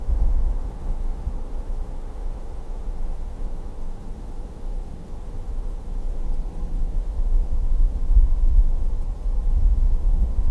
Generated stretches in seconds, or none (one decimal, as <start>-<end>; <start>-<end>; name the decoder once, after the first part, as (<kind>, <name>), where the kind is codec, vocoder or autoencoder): 0.0-6.2 (autoencoder, DAC-VAE); 6.8-8.9; 9.5-10.5